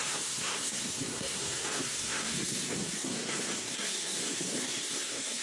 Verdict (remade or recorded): remade